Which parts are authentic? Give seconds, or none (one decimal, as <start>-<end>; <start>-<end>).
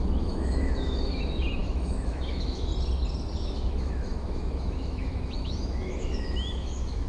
2.7-3.4